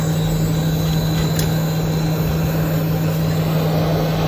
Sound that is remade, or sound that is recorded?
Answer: recorded